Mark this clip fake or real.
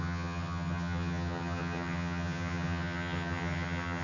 fake